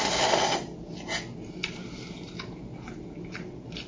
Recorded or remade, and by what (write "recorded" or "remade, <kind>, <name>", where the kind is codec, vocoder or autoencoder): recorded